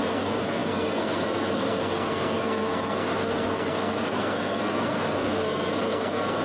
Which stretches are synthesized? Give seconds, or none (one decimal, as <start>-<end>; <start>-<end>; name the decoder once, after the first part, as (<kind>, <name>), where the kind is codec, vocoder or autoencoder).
0.0-6.4 (codec, SNAC)